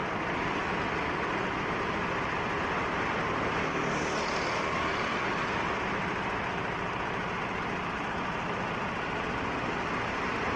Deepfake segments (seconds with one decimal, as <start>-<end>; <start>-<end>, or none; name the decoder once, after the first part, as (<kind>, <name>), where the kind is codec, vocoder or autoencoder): 0.0-0.7 (vocoder, BigVGAN v2); 4.9-7.5